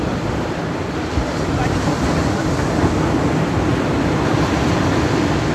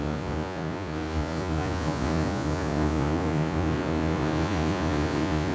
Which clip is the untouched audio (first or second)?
first